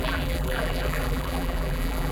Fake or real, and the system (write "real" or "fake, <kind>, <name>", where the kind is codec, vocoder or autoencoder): fake, vocoder, BigVGAN v2